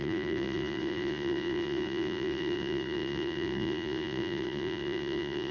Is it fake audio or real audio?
fake